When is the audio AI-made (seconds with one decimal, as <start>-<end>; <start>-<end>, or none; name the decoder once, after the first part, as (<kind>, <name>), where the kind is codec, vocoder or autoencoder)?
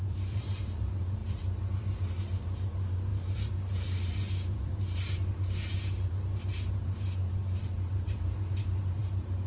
0.0-9.5 (vocoder, BigVGAN v2)